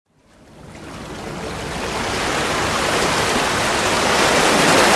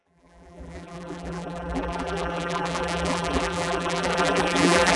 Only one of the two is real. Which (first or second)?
first